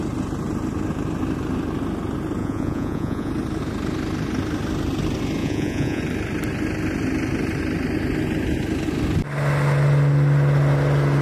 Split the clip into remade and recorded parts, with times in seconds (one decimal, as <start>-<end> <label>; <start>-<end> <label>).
0.0-2.4 recorded; 2.4-3.3 remade; 3.3-5.4 recorded; 5.4-6.0 remade; 6.0-11.2 recorded